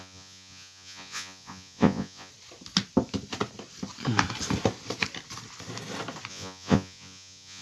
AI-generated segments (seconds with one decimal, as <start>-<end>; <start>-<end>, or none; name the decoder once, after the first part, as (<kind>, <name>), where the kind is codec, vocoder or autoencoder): 0.0-2.3 (vocoder, Vocos); 6.3-7.6